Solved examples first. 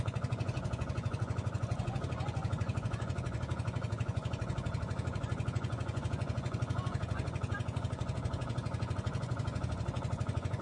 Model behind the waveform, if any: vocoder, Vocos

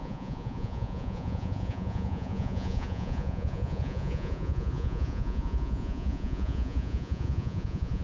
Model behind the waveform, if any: vocoder, Vocos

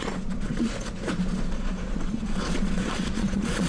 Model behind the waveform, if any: vocoder, Vocos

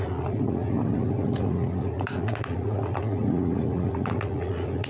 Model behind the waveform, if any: vocoder, Vocos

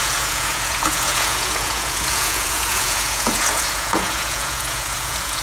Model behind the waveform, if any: vocoder, Vocos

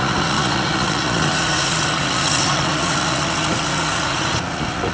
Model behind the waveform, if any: vocoder, Vocos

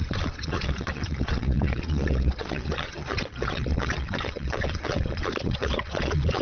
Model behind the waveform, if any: vocoder, Vocos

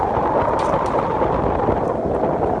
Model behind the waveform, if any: none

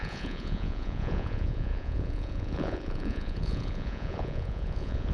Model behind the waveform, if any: vocoder, Vocos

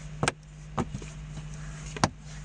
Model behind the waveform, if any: none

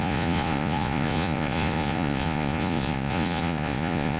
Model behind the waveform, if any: vocoder, Vocos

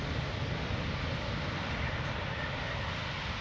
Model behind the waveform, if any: none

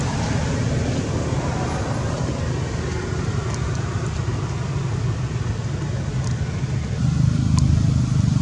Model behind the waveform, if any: none